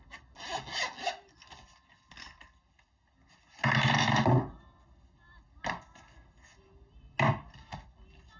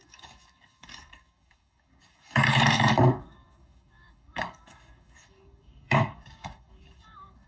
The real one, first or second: first